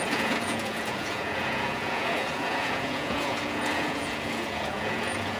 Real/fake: fake